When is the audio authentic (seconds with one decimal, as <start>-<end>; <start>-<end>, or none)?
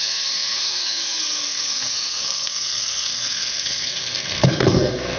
none